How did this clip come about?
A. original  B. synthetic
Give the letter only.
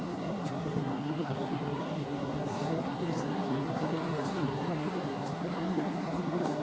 B